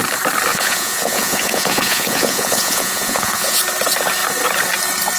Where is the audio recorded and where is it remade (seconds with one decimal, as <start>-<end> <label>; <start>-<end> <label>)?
0.0-0.5 recorded; 0.5-3.6 remade; 3.6-5.2 recorded